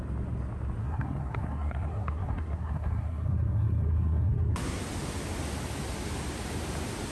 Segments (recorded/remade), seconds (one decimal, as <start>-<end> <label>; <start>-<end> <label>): 0.0-0.8 recorded; 0.8-4.8 remade; 4.8-7.1 recorded